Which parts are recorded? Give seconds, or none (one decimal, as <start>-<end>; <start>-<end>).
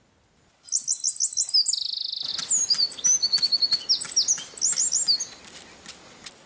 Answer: 0.0-6.5